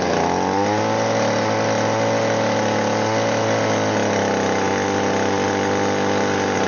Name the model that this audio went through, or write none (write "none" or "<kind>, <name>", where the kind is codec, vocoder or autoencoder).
none